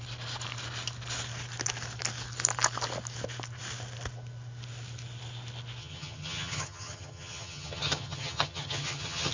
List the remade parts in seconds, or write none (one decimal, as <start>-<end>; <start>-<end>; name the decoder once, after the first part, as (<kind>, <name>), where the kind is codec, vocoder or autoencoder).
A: 5.8-9.3 (vocoder, HiFi-GAN)